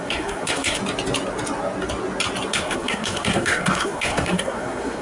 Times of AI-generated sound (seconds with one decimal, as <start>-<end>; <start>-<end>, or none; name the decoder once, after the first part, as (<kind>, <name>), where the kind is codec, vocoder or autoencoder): 0.0-0.8 (codec, SNAC); 2.5-5.0